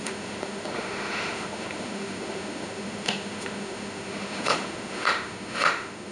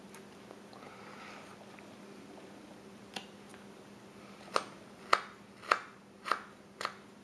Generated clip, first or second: first